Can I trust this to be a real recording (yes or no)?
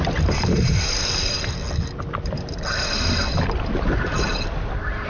yes